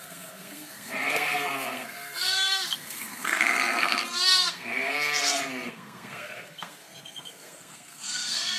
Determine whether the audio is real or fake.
fake